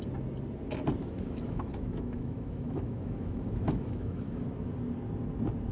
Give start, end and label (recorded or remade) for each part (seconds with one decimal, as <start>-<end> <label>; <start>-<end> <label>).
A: 0.0-1.0 recorded; 1.0-4.4 remade; 4.4-5.7 recorded